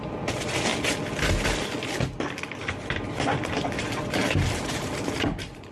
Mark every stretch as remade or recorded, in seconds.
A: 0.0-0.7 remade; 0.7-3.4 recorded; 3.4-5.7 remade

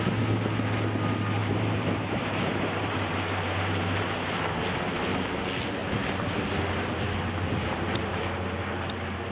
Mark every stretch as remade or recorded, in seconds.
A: 0.0-1.4 recorded; 1.4-4.5 remade; 4.5-9.3 recorded

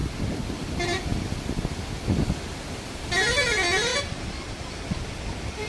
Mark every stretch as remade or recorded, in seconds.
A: 0.0-3.9 recorded; 3.9-4.7 remade; 4.7-5.7 recorded

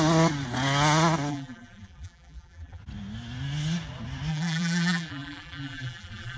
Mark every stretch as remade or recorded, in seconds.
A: 0.0-1.3 recorded; 1.3-2.8 remade; 2.8-4.3 recorded; 4.3-6.4 remade

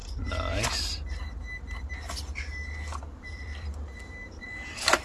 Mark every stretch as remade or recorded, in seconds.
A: 0.0-3.0 recorded; 3.0-3.7 remade; 3.7-4.4 recorded; 4.4-5.0 remade

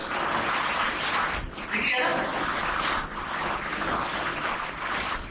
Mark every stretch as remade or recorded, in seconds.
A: 0.0-1.7 remade; 1.7-5.3 recorded